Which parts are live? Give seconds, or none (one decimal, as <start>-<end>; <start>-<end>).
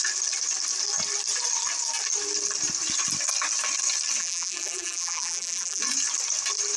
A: 0.0-4.2; 5.8-6.8